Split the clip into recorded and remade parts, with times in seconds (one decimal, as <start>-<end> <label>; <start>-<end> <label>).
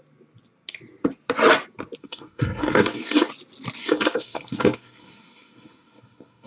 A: 0.0-2.0 recorded; 2.0-3.3 remade; 3.3-3.8 recorded; 3.8-6.5 remade